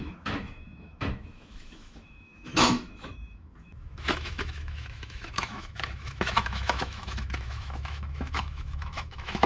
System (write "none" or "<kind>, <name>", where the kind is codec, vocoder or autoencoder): autoencoder, DAC-VAE